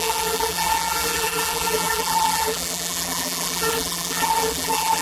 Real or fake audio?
fake